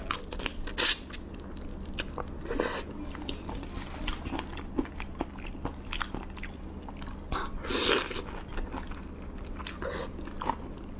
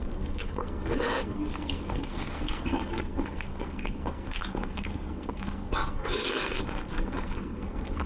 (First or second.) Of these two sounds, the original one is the first